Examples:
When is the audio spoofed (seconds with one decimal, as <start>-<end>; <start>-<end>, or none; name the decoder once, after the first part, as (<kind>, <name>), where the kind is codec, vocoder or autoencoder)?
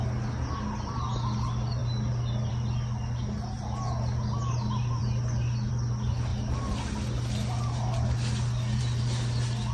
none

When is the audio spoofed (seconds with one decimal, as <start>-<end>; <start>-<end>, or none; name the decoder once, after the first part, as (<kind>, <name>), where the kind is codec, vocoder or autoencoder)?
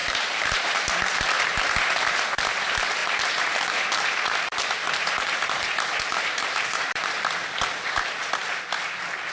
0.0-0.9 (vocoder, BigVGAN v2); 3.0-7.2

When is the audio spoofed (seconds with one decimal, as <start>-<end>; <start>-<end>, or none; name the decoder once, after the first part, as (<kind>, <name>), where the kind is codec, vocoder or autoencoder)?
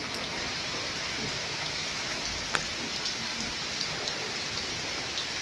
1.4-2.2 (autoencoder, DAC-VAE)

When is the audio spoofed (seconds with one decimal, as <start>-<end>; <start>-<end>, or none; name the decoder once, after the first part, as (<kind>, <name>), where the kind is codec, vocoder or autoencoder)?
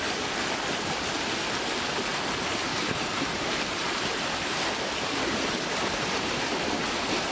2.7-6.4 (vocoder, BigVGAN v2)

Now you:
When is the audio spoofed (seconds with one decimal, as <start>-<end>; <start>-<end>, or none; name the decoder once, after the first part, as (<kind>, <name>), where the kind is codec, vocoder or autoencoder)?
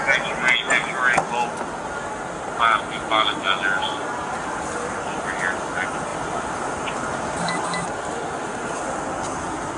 6.1-6.7 (vocoder, BigVGAN v2)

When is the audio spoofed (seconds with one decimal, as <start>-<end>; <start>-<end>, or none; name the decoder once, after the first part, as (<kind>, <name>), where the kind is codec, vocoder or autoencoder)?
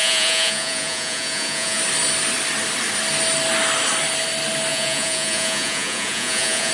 0.0-1.8 (vocoder, Vocos); 4.7-6.7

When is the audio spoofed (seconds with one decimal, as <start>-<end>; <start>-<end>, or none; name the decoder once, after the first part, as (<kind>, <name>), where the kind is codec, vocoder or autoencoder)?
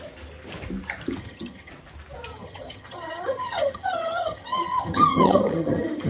1.2-1.7 (vocoder, HiFi-GAN); 2.3-6.1